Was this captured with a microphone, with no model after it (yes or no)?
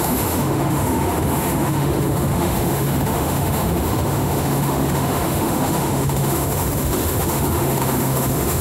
no